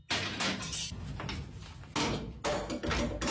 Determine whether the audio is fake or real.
real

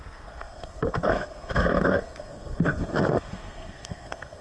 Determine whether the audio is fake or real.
fake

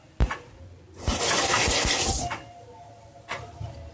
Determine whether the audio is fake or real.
real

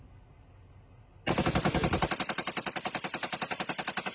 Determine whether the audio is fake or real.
real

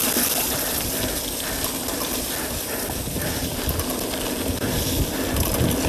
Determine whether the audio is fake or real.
real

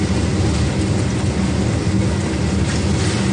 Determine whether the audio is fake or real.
real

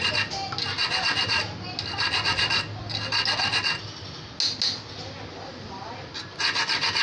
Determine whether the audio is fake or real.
real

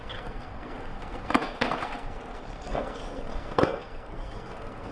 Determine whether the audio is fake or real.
fake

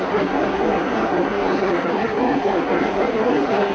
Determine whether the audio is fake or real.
fake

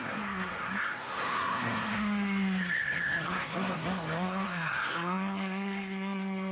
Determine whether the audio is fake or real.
fake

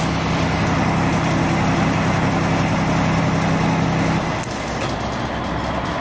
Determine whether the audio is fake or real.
real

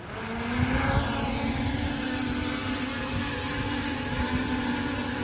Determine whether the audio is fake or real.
real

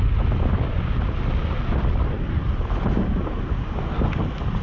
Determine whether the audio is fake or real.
real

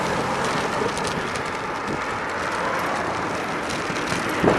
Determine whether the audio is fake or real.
real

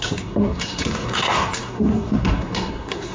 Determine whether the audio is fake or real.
fake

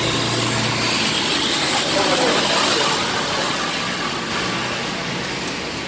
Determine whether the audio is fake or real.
real